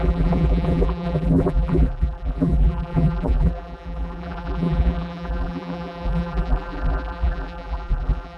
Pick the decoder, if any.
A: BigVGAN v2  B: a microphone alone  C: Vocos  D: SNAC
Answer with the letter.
A